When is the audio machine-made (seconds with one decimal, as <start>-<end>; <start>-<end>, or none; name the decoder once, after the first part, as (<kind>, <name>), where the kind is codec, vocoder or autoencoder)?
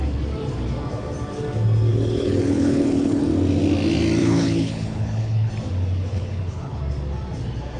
1.9-3.2 (codec, HILCodec); 4.2-5.5; 6.1-6.8